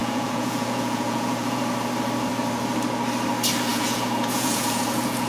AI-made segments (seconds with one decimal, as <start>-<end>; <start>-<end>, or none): 0.0-1.6; 3.7-5.3